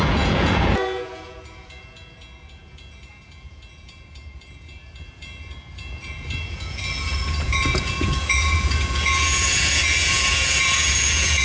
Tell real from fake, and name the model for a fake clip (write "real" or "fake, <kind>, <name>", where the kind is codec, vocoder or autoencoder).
fake, vocoder, Vocos